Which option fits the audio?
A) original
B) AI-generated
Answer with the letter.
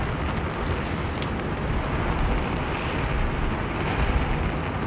A